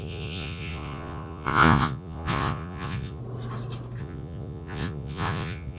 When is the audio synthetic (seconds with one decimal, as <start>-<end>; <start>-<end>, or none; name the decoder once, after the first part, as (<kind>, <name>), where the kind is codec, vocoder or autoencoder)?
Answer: 0.0-3.2 (vocoder, Vocos); 4.0-5.8